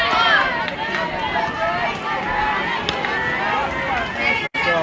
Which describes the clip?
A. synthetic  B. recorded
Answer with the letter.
B